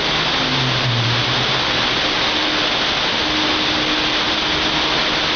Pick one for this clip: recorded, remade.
recorded